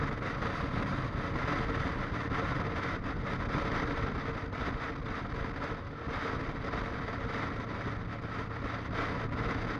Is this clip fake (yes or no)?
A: no